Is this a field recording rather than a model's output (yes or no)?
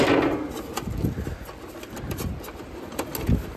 yes